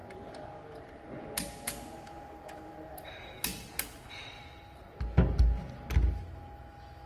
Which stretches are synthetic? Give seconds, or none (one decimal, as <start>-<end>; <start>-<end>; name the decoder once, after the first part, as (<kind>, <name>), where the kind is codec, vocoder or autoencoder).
1.5-3.5 (autoencoder, DAC-VAE); 6.2-7.1